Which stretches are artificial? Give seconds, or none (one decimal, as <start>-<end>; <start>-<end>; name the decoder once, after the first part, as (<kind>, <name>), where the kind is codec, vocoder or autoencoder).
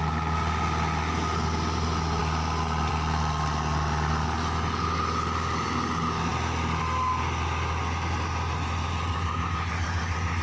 none